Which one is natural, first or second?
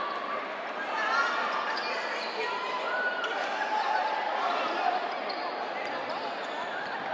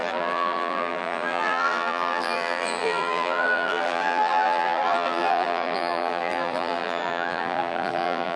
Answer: first